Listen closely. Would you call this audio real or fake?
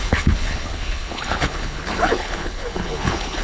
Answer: fake